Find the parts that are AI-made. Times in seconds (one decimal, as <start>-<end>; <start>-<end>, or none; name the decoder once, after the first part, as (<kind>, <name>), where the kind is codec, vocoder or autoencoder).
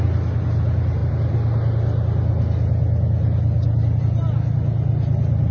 none